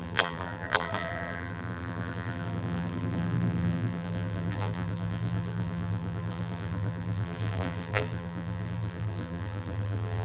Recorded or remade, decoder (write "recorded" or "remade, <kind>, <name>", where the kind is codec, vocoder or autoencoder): remade, vocoder, BigVGAN v2